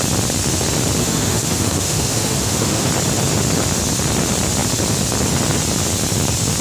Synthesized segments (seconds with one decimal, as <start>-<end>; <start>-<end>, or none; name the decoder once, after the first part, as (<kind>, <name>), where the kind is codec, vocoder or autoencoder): 1.0-2.9 (autoencoder, DAC-VAE)